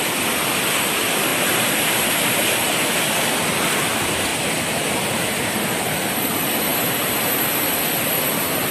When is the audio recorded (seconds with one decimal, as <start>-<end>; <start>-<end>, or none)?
4.3-5.5; 6.7-7.5